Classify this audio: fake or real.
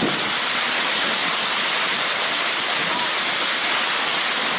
real